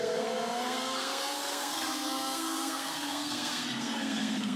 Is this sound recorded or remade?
remade